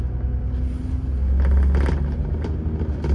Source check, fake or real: real